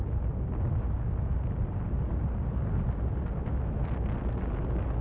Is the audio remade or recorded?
recorded